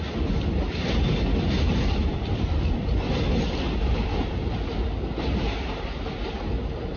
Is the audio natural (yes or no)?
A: yes